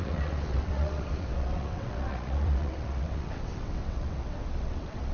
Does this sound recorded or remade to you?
remade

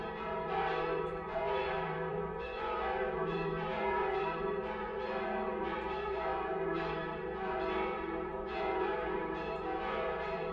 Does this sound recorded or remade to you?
remade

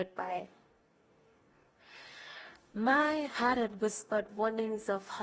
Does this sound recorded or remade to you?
remade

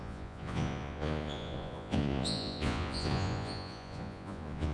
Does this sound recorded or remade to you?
remade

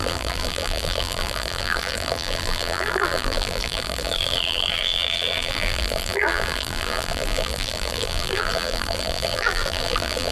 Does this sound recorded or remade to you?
remade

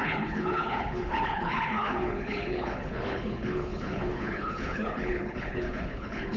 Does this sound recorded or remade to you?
remade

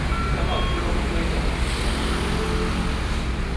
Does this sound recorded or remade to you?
recorded